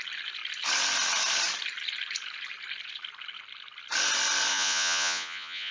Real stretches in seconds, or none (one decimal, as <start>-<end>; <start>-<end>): 0.0-4.5